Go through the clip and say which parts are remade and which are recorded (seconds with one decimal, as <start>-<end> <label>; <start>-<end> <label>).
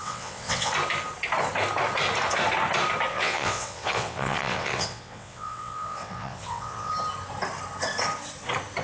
0.0-0.7 remade; 0.7-3.1 recorded; 3.1-6.9 remade; 6.9-8.8 recorded